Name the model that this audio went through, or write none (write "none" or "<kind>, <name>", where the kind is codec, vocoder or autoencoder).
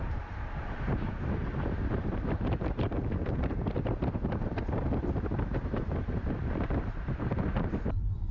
vocoder, BigVGAN v2